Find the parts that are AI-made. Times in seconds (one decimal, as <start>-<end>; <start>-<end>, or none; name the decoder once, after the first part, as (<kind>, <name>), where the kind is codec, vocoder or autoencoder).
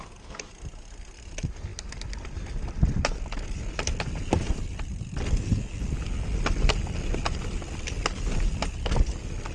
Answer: none